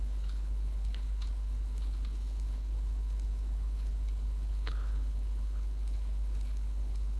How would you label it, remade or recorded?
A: remade